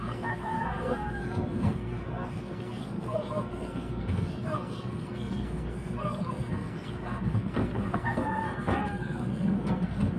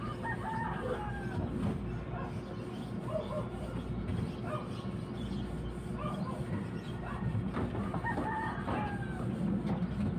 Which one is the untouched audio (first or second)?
second